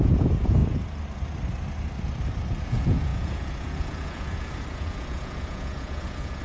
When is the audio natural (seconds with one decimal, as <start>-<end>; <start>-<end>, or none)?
0.6-2.6